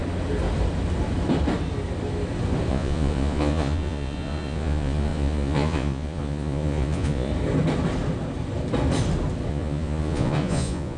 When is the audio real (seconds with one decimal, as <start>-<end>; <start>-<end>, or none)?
0.0-2.7; 7.3-9.5